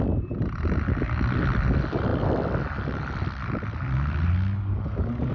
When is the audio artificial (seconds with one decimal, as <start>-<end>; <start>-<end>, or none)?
none